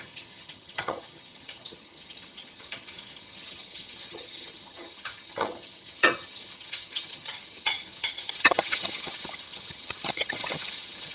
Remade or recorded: remade